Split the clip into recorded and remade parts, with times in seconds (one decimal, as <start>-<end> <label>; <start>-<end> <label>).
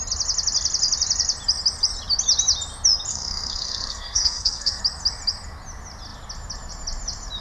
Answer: 0.0-3.1 recorded; 3.1-4.8 remade; 4.8-7.4 recorded